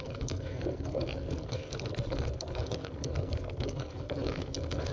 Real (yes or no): no